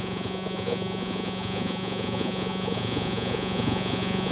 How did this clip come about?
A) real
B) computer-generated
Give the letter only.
B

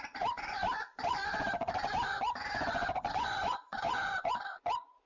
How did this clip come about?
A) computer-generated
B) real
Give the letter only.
A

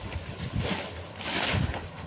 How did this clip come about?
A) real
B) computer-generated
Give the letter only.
B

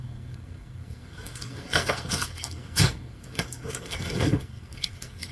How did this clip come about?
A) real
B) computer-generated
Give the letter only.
B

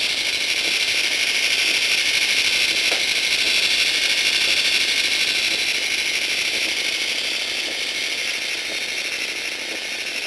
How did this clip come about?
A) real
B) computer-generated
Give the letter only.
A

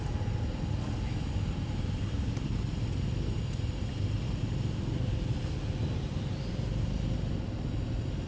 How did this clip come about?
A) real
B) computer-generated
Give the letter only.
A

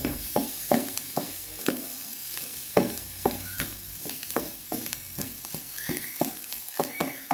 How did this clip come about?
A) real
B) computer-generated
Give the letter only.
B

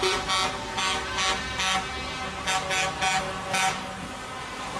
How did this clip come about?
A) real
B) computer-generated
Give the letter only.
A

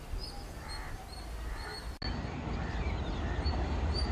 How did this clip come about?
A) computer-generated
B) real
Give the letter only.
B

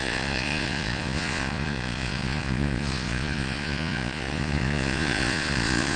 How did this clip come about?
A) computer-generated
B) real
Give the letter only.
A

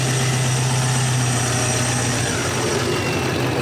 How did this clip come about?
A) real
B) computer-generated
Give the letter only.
A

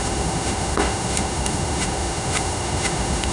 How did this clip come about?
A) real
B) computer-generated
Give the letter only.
B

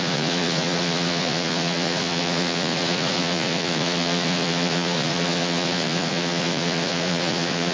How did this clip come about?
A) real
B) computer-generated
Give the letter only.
B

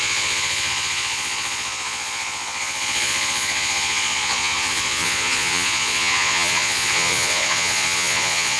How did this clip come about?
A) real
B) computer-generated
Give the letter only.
B